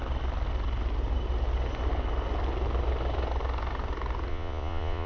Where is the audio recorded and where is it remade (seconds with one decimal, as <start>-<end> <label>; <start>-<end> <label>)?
0.0-4.3 recorded; 4.3-5.1 remade